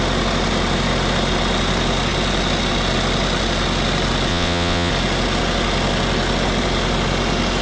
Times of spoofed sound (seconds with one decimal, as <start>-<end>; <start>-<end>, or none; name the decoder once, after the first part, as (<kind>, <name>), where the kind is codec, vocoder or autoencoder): 4.3-4.9 (vocoder, WaveNeXt)

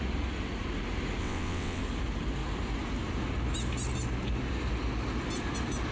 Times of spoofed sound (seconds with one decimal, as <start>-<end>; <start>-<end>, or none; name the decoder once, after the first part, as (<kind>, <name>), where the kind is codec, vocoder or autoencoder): 1.2-1.8 (vocoder, WaveNeXt)

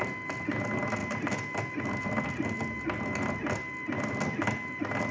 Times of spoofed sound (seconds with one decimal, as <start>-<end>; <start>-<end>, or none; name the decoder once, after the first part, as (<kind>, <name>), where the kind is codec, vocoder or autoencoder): none

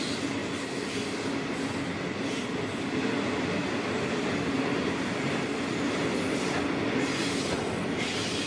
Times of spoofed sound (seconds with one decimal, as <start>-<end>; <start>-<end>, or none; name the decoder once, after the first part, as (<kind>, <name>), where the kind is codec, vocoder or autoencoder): none

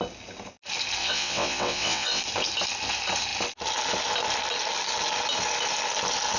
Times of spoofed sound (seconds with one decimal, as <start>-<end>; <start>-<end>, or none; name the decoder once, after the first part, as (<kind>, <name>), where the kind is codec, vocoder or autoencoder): 1.0-2.2 (vocoder, WaveNeXt)

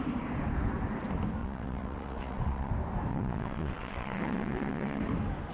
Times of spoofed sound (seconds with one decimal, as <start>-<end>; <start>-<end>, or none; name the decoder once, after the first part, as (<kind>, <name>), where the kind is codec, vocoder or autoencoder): 1.4-2.7 (vocoder, WaveNeXt); 3.1-5.0

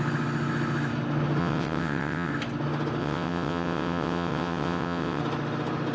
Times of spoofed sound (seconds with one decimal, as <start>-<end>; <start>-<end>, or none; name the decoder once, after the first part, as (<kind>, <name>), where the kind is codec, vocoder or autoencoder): 1.4-2.3 (vocoder, WaveNeXt); 3.0-5.2

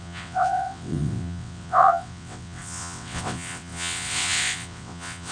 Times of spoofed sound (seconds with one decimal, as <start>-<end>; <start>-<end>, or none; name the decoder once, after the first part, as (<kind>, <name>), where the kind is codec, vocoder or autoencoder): 0.0-5.3 (vocoder, WaveNeXt)